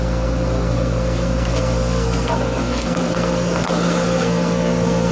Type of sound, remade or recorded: remade